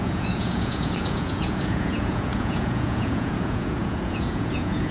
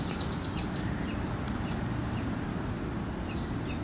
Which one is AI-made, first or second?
first